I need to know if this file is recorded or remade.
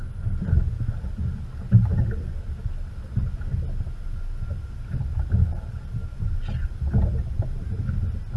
recorded